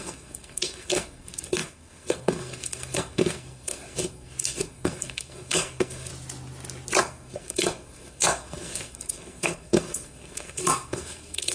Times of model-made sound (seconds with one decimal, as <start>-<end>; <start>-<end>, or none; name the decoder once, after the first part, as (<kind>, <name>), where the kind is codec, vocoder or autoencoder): 0.0-6.1 (codec, SNAC); 7.0-11.5

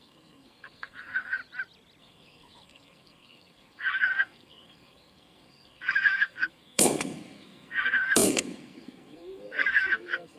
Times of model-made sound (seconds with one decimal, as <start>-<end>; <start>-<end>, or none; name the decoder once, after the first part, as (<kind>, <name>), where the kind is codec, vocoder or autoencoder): 0.0-1.4 (codec, SNAC); 2.0-10.4

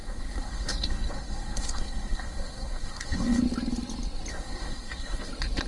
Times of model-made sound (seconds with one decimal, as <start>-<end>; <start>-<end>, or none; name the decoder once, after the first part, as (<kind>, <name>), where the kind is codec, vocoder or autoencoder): 0.0-3.4 (codec, SNAC); 4.3-5.3

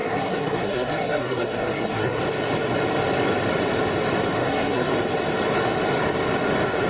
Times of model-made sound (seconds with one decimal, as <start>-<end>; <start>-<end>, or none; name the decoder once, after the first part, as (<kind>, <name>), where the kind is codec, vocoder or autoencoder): 0.0-2.2 (codec, SNAC); 4.4-4.9

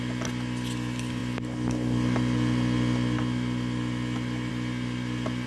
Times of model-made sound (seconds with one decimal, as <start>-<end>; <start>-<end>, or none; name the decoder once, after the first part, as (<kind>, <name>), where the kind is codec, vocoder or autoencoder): none

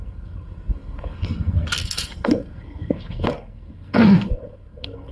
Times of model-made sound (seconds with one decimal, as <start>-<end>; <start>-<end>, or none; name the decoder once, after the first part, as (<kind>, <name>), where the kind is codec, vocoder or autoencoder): 0.0-5.1 (codec, SNAC)

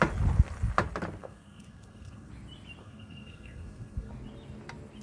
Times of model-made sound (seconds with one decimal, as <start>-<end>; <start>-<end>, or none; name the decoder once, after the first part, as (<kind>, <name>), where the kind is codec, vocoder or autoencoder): 1.2-2.3 (codec, SNAC); 2.8-4.1